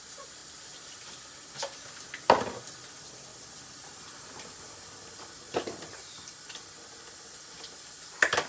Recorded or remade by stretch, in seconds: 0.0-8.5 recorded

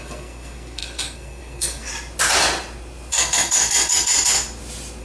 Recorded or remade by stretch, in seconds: 0.0-1.9 remade; 1.9-3.1 recorded; 3.1-4.1 remade; 4.1-5.0 recorded

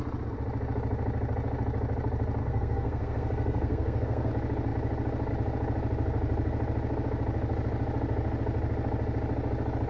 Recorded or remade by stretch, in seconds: 0.0-2.4 recorded; 2.4-4.3 remade; 4.3-9.9 recorded

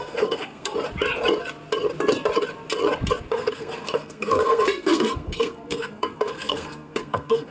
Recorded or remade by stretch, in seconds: 0.0-0.7 remade; 0.7-3.3 recorded; 3.3-7.5 remade

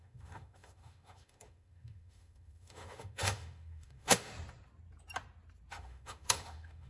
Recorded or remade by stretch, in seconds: 0.0-4.3 remade; 4.3-5.7 recorded; 5.7-6.9 remade